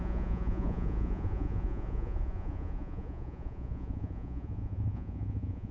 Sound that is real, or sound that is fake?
fake